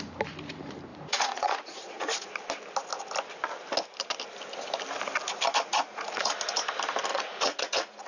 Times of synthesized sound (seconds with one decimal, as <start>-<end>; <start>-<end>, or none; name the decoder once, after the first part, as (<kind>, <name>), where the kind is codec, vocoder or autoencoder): 0.9-2.3 (vocoder, Vocos); 5.7-6.3; 7.1-8.1